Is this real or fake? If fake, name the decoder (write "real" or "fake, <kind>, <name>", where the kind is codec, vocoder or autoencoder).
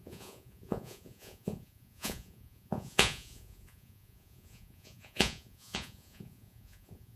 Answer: fake, vocoder, Vocos